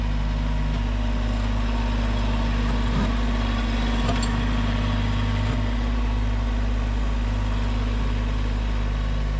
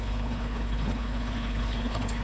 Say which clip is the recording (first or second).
first